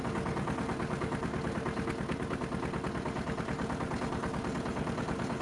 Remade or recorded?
recorded